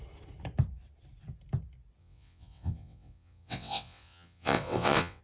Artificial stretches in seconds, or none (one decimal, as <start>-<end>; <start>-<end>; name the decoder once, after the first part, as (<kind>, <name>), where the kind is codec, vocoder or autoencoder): 2.0-5.2 (vocoder, WaveNeXt)